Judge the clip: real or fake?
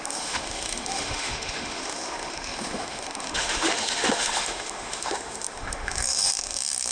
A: fake